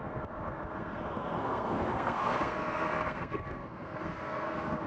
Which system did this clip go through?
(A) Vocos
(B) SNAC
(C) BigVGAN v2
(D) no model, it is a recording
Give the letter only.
B